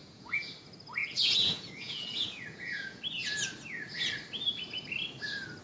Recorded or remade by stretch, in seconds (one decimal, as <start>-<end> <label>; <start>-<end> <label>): 0.0-0.5 remade; 0.5-1.0 recorded; 1.0-3.0 remade; 3.0-5.6 recorded